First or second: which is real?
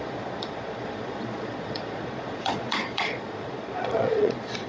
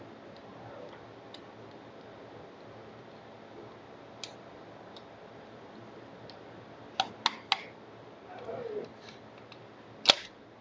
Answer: second